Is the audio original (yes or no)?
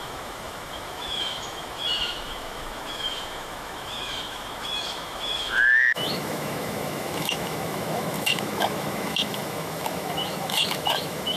no